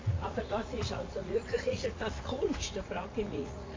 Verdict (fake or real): fake